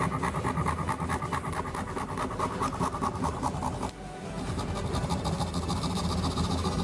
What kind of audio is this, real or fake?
real